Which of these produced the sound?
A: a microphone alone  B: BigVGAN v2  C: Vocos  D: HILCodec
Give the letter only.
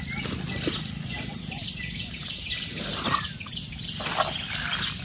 A